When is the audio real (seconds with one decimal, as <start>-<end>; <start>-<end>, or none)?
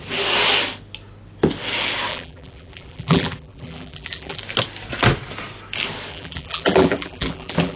0.0-2.1; 4.4-6.1